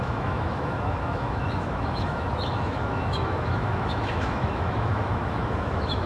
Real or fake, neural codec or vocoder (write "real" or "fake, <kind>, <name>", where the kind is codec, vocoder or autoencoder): fake, autoencoder, DAC-VAE